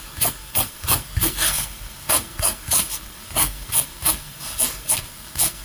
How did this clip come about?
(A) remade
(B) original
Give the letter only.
A